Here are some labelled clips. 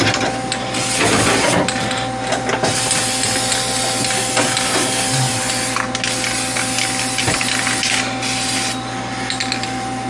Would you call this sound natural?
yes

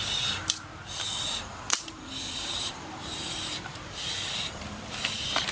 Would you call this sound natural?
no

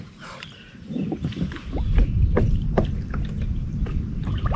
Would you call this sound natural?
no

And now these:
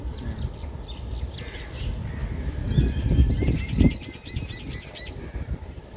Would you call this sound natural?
yes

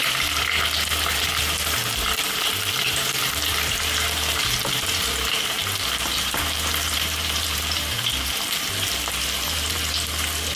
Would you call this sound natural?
no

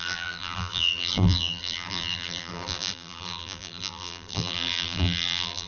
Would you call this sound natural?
no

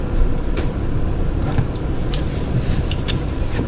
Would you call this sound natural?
no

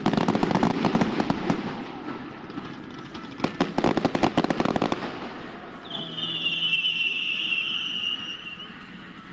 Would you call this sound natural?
yes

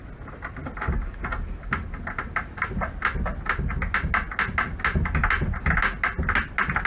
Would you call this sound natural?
yes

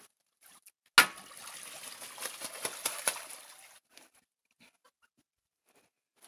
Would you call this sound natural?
yes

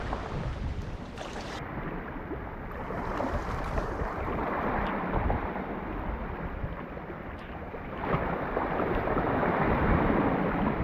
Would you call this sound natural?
no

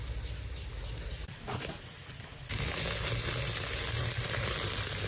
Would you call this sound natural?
yes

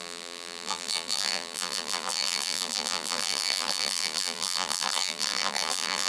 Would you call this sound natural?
no